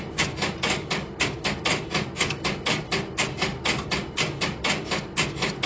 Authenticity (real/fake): real